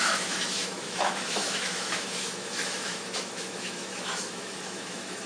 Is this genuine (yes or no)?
no